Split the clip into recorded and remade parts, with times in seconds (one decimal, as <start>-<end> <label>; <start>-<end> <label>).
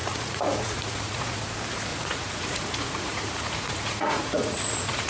0.0-1.4 remade; 1.4-1.9 recorded; 1.9-5.1 remade